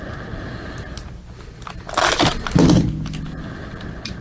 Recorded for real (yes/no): yes